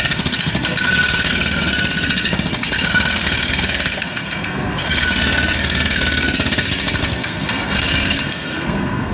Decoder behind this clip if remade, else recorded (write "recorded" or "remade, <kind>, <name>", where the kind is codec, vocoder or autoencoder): remade, codec, SNAC